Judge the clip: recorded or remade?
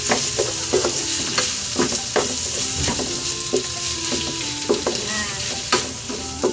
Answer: recorded